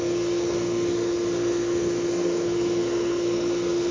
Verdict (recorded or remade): remade